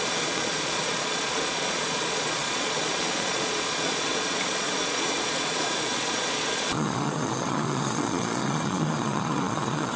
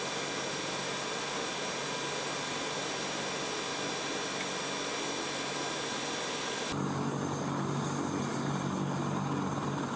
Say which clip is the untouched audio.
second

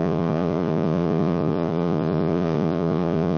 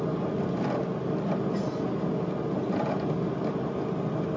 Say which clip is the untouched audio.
second